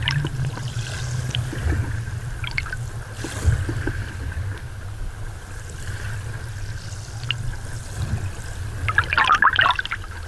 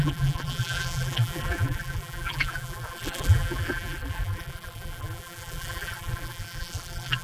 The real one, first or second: first